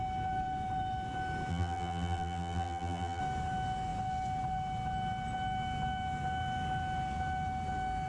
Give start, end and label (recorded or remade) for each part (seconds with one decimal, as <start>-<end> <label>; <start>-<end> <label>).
0.0-1.5 recorded; 1.5-3.2 remade; 3.2-8.1 recorded

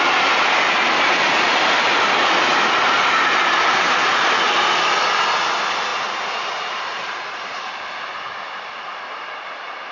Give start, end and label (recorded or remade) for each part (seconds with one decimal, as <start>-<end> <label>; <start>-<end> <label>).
0.0-5.9 recorded; 5.9-7.6 remade; 7.6-9.9 recorded

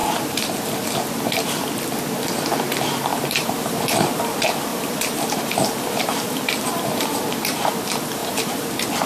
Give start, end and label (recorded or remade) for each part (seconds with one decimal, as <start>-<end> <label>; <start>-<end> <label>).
0.0-0.6 remade; 0.6-3.1 recorded; 3.1-4.2 remade; 4.2-4.7 recorded; 4.7-7.7 remade; 7.7-8.2 recorded; 8.2-8.7 remade; 8.7-9.1 recorded

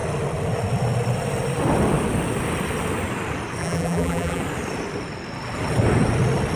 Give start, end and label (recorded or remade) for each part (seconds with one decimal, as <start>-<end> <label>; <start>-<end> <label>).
0.0-3.6 recorded; 3.6-4.4 remade; 4.4-6.6 recorded